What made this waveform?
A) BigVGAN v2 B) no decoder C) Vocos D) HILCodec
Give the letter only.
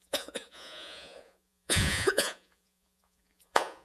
C